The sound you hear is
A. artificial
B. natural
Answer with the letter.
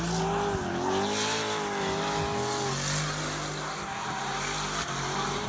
B